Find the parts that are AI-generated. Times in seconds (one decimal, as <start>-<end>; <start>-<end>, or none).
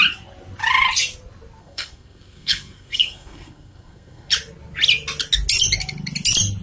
1.6-4.3